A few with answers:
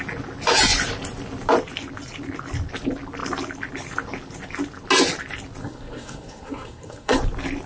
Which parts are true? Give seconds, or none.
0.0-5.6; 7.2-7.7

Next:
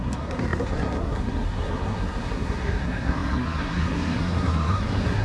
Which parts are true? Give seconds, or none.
none

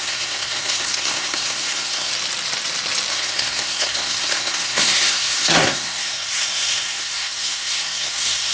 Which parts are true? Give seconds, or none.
2.1-3.1

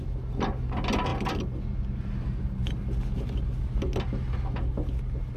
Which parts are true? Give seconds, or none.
0.0-5.4

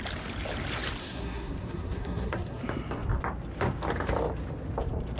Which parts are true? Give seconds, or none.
0.0-1.0; 2.6-5.2